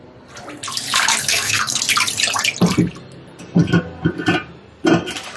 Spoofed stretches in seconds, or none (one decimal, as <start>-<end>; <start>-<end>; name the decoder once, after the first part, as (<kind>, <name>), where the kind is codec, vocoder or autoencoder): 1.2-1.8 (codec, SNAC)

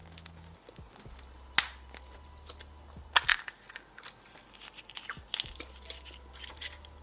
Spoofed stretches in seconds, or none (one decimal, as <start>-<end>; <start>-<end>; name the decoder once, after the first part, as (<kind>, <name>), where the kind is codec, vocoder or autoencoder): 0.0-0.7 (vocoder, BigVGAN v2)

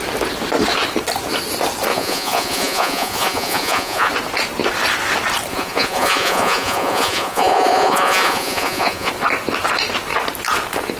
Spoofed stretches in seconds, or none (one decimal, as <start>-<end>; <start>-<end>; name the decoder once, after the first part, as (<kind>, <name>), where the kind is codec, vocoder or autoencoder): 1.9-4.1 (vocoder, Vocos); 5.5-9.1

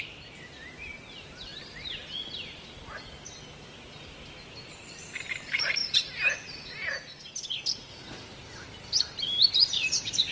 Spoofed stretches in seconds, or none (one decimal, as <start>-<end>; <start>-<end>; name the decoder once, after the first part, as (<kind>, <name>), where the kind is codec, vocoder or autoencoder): 0.0-1.5 (vocoder, BigVGAN v2); 4.8-5.8; 8.8-10.3

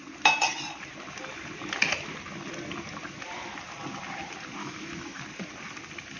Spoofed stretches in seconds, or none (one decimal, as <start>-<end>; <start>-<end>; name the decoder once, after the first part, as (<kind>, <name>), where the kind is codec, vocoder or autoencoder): 4.6-5.2 (autoencoder, DAC-VAE)